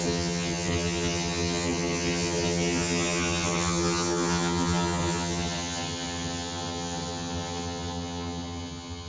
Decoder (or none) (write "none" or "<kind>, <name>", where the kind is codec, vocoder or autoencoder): vocoder, HiFi-GAN